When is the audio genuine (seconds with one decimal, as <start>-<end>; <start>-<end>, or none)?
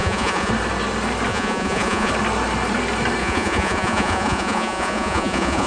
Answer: 0.5-1.3; 2.1-3.2